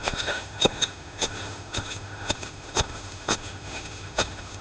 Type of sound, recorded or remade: remade